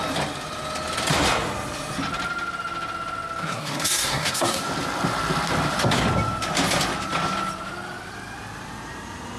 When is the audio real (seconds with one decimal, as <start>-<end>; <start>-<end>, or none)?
0.0-3.4; 4.6-9.4